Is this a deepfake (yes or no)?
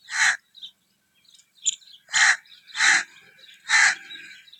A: no